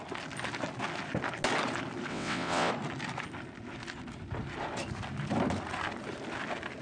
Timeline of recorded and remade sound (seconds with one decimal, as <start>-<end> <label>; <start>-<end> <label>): 0.0-2.1 recorded; 2.1-2.7 remade; 2.7-6.8 recorded